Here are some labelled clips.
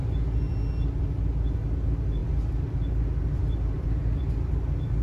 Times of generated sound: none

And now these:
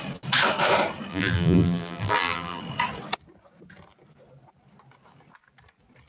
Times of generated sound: 1.1-2.6 (vocoder, BigVGAN v2)

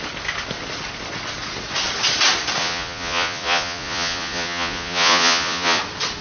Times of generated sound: 2.6-5.8 (vocoder, Vocos)

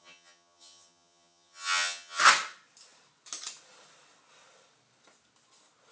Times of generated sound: 0.0-2.2 (vocoder, HiFi-GAN)

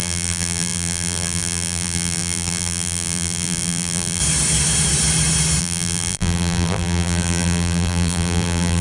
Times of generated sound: 0.0-4.2 (vocoder, BigVGAN v2); 5.6-8.8

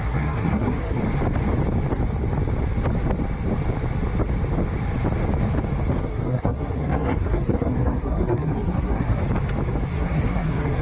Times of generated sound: 0.0-1.0 (codec, SNAC); 6.0-9.2; 9.9-10.8